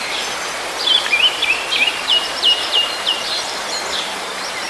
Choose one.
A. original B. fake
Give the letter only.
B